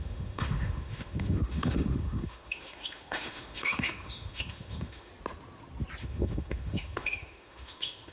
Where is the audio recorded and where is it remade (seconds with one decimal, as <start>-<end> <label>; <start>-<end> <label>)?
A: 0.0-5.1 remade; 5.1-6.0 recorded; 6.0-8.1 remade

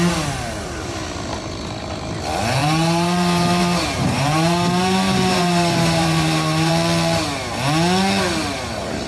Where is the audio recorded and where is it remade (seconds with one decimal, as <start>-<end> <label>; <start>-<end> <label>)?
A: 0.0-2.6 recorded; 2.6-6.7 remade; 6.7-9.1 recorded